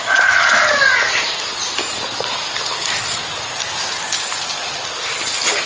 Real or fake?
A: real